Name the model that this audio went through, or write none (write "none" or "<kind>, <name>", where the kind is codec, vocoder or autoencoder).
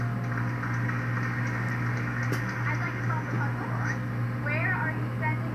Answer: none